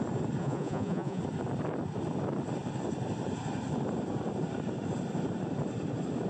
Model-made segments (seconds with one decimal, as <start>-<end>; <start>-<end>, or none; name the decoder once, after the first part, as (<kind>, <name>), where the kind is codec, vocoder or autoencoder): 0.4-1.2 (vocoder, Vocos)